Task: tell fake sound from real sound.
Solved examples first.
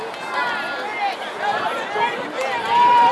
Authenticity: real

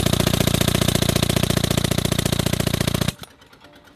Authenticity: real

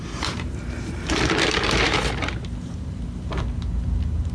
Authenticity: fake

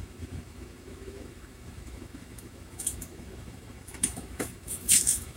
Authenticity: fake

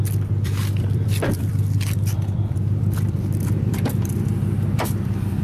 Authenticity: fake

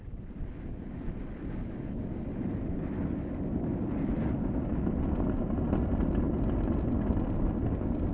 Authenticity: real